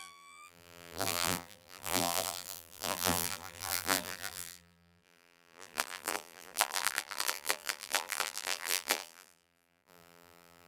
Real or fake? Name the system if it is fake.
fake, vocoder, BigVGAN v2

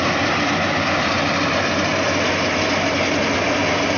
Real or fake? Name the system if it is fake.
real